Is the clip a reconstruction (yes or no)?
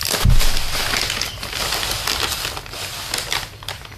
no